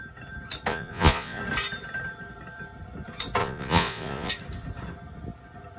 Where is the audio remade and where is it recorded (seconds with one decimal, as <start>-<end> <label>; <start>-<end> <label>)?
0.0-0.7 recorded; 0.7-1.4 remade; 1.4-3.4 recorded; 3.4-4.3 remade; 4.3-5.8 recorded